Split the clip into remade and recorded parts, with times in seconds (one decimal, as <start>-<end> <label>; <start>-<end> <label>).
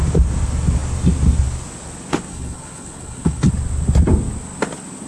0.0-2.3 recorded; 2.3-3.5 remade; 3.5-5.1 recorded